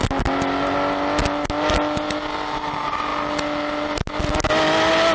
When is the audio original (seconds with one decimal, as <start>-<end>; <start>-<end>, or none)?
0.0-5.1